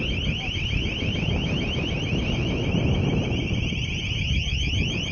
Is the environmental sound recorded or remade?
recorded